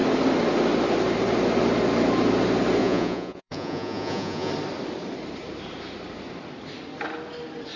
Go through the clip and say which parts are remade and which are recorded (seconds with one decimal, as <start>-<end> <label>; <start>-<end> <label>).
0.0-2.8 recorded; 2.8-4.5 remade; 4.5-7.8 recorded